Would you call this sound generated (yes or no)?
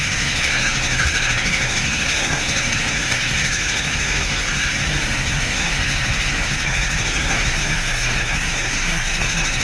yes